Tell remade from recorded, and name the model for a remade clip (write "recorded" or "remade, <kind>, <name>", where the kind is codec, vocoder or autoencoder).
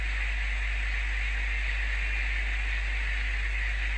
recorded